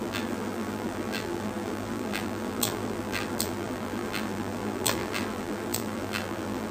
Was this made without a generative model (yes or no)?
no